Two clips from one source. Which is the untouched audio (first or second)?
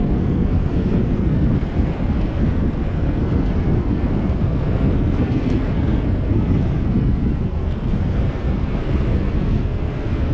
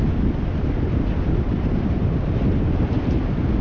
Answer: second